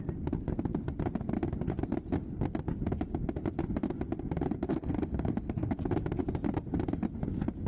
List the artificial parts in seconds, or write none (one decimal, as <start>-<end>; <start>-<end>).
4.7-5.8